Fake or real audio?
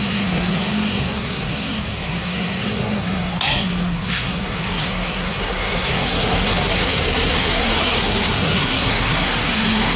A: fake